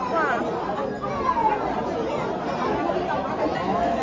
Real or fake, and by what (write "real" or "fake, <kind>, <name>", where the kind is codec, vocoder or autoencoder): real